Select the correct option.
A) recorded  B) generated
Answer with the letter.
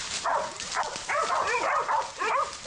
B